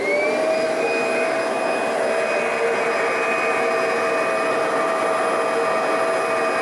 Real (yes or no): yes